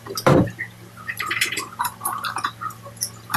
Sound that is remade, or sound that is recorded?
remade